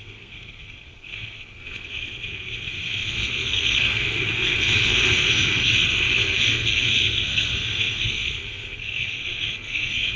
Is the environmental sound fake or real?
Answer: fake